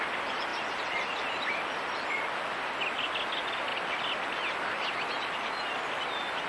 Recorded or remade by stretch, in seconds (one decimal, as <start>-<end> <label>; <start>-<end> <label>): 0.0-6.5 recorded